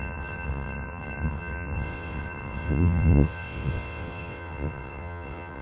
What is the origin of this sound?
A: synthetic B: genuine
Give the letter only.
A